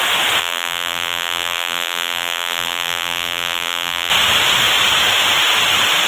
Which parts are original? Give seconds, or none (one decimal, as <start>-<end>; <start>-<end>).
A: 0.0-0.4; 4.1-6.1